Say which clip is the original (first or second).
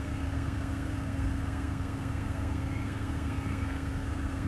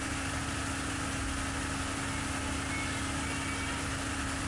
second